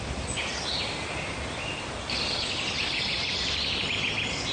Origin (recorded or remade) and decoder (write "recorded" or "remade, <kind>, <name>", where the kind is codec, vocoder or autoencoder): recorded